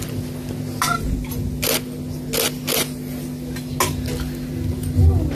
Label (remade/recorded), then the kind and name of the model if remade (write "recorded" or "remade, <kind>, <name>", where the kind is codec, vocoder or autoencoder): recorded